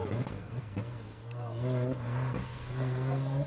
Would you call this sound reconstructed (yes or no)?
yes